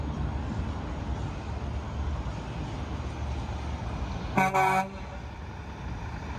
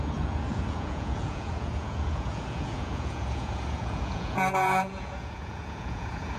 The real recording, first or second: first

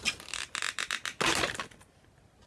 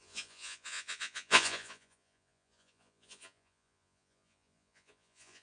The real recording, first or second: first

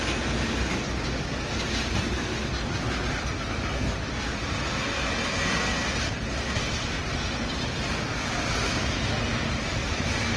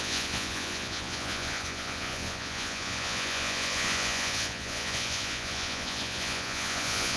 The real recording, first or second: first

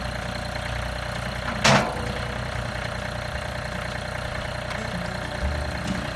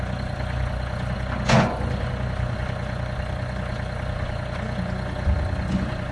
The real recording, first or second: first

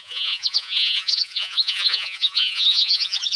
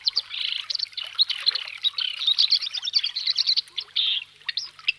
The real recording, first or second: second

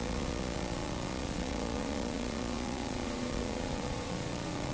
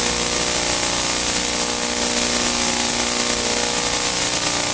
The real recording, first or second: second